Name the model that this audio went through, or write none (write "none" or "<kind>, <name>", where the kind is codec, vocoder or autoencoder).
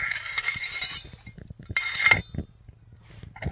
none